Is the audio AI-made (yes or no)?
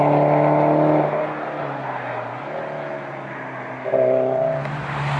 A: no